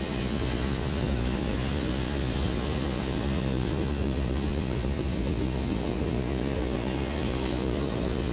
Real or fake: fake